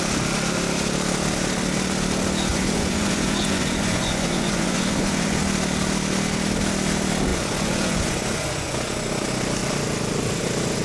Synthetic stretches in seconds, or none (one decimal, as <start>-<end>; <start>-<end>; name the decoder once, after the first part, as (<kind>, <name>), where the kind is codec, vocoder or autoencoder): 2.5-5.4 (vocoder, Vocos); 7.3-9.1